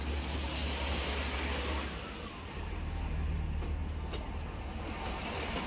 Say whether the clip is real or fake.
real